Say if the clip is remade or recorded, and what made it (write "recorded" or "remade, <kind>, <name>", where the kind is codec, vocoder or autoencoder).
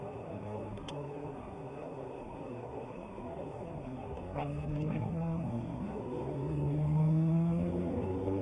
remade, codec, SNAC